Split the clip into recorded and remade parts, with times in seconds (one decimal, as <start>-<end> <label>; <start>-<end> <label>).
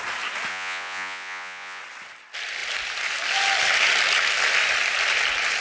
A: 0.0-0.5 recorded; 0.5-1.8 remade; 1.8-5.6 recorded